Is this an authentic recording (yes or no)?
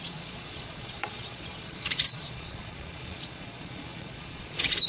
no